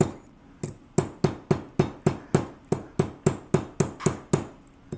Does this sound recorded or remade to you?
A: recorded